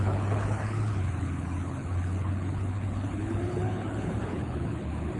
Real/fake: fake